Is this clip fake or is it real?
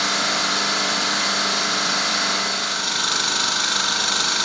fake